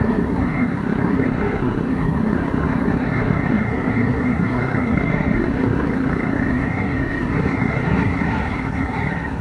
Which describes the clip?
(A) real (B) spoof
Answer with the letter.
B